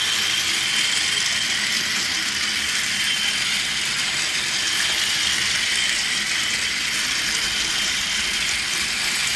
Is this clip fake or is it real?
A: real